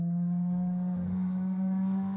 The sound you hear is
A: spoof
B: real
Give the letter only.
A